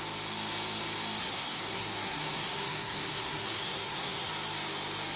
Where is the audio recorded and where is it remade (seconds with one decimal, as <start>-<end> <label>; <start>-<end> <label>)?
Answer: 0.0-1.2 recorded; 1.2-4.3 remade; 4.3-5.2 recorded